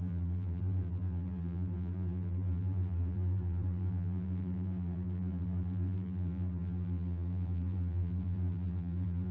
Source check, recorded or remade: remade